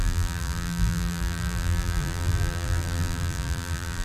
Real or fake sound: fake